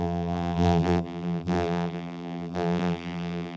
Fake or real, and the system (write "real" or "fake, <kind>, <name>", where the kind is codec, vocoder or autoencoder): fake, vocoder, BigVGAN v2